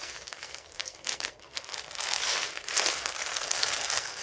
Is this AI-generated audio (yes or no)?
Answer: yes